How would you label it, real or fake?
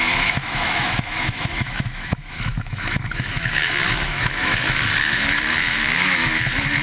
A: fake